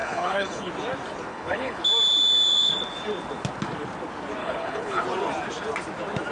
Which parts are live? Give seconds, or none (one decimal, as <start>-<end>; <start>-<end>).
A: 0.7-1.3; 1.8-4.4; 5.0-6.3